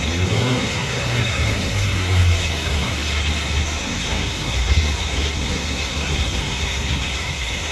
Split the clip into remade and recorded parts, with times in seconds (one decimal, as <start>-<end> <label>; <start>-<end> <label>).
0.0-7.7 remade